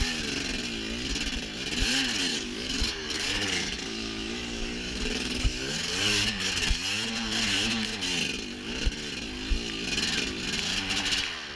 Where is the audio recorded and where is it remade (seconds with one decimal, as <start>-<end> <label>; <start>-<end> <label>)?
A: 0.0-2.3 recorded; 2.3-6.5 remade; 6.5-11.6 recorded